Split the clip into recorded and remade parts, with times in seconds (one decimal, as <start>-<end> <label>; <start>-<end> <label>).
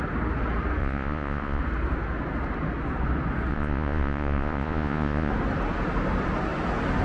0.0-0.8 recorded; 0.8-1.6 remade; 1.6-3.5 recorded; 3.5-5.3 remade; 5.3-7.0 recorded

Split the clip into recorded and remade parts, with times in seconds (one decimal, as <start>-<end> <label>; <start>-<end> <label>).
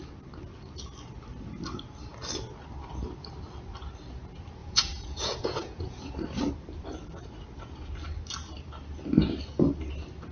0.0-4.6 recorded; 4.6-6.1 remade; 6.1-10.3 recorded